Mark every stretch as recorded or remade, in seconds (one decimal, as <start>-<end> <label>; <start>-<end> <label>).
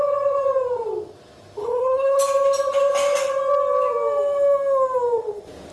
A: 0.0-1.6 recorded; 1.6-2.2 remade; 2.2-5.7 recorded